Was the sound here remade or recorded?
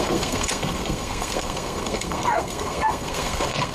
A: remade